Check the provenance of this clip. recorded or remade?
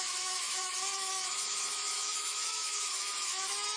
remade